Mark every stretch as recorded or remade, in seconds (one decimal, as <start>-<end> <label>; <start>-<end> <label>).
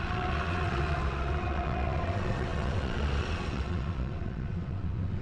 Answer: 0.0-5.2 remade